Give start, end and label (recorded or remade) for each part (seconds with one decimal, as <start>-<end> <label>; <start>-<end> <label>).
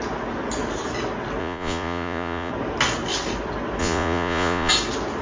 0.0-1.4 recorded; 1.4-2.5 remade; 2.5-3.8 recorded; 3.8-4.7 remade; 4.7-5.2 recorded